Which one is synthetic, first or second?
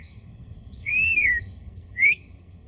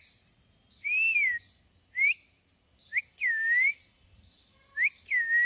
first